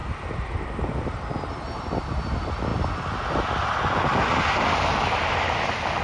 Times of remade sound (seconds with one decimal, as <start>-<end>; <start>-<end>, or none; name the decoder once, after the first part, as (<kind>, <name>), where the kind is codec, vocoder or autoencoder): none